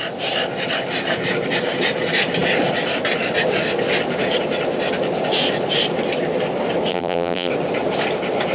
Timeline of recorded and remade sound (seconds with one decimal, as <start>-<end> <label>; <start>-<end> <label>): 0.0-6.9 recorded; 6.9-7.5 remade; 7.5-8.5 recorded